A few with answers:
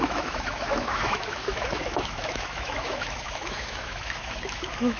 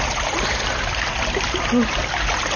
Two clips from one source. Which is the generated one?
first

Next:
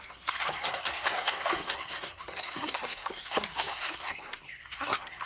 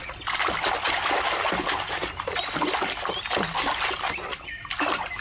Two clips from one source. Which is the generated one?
first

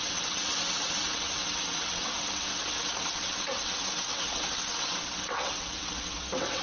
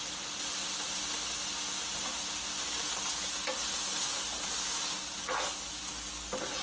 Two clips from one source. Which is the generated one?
first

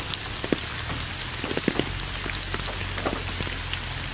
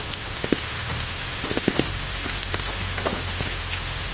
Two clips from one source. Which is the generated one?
second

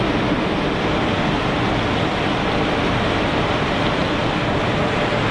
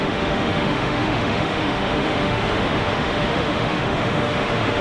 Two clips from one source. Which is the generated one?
second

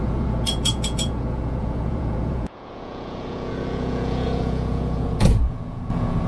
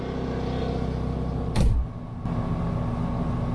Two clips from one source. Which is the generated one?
first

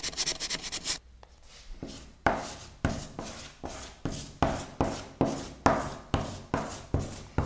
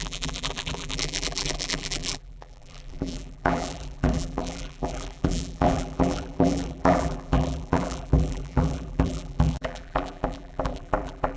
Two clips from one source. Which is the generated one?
second